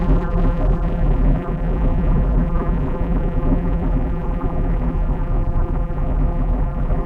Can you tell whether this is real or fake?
fake